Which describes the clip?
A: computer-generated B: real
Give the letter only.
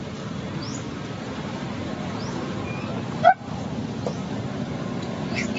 B